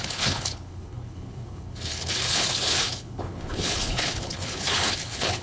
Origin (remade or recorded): remade